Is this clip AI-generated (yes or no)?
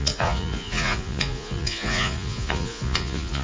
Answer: yes